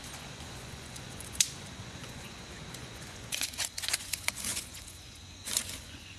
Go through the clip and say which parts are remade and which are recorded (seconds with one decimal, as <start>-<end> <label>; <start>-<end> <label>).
0.0-6.2 remade